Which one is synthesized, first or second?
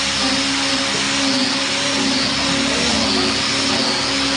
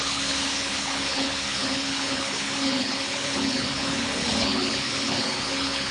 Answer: second